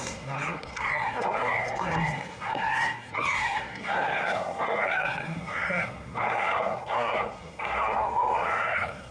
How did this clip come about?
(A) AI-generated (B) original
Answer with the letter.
A